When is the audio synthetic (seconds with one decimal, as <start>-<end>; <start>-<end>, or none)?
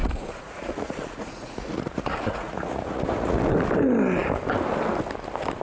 0.0-3.4